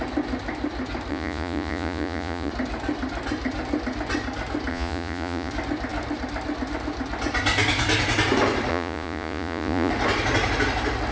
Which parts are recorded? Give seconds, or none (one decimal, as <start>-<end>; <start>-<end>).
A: 0.0-1.1; 2.5-4.7; 5.5-8.7; 9.9-11.1